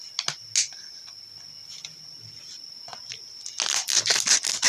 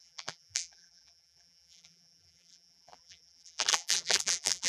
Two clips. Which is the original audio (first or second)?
first